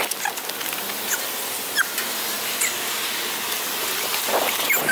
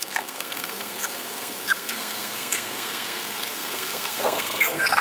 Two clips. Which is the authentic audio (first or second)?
first